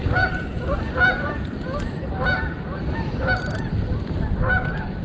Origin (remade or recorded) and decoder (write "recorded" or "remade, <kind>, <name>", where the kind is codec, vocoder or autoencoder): recorded